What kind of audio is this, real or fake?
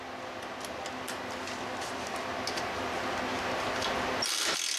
real